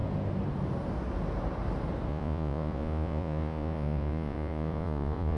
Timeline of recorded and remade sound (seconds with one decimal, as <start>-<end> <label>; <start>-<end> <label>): 0.0-2.1 recorded; 2.1-5.4 remade